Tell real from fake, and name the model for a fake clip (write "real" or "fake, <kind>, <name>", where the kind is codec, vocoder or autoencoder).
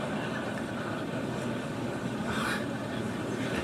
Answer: real